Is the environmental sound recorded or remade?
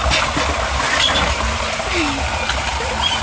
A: recorded